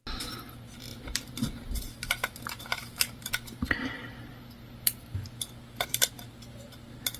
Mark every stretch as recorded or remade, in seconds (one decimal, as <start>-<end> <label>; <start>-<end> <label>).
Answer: 0.0-0.9 recorded; 0.9-3.3 remade; 3.3-7.2 recorded